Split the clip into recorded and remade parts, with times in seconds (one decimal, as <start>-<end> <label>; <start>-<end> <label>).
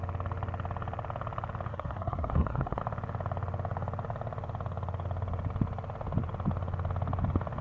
0.0-1.7 recorded; 1.7-2.8 remade; 2.8-7.6 recorded